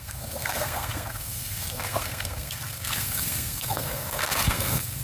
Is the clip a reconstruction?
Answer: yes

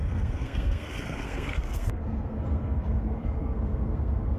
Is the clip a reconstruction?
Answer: yes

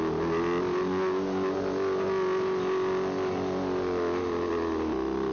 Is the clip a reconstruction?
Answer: no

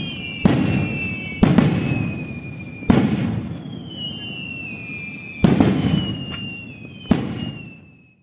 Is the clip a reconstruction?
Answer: no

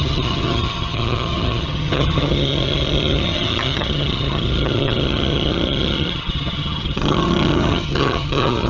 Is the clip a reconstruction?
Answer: yes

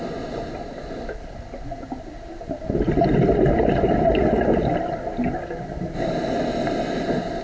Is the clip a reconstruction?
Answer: no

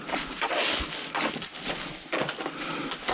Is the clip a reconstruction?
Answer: no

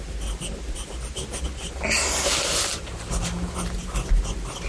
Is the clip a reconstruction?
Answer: no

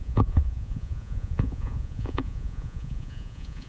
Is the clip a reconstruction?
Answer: yes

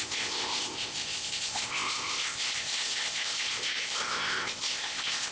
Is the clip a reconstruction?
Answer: yes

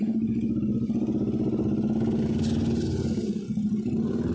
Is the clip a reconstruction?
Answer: no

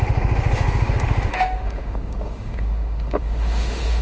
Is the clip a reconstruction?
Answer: yes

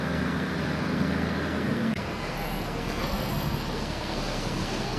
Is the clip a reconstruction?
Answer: yes